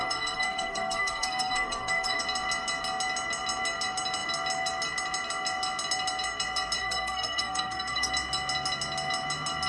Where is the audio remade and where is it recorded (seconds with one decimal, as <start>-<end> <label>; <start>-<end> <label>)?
0.0-2.2 remade; 2.2-6.8 recorded; 6.8-8.1 remade; 8.1-9.7 recorded